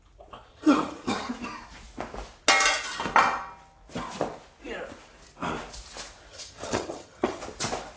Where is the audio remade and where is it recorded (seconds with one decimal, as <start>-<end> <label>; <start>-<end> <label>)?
0.0-0.5 recorded; 0.5-1.3 remade; 1.3-6.3 recorded; 6.3-7.4 remade; 7.4-8.0 recorded